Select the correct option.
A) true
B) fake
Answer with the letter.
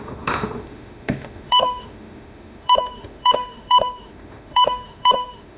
B